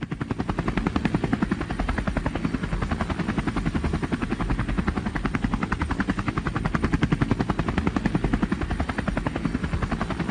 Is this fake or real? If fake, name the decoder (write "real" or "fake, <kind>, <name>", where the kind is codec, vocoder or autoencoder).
real